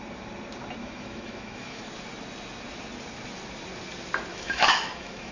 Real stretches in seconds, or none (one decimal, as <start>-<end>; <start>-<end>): 0.0-0.8; 1.8-4.3